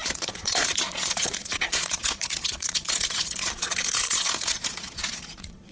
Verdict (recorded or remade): remade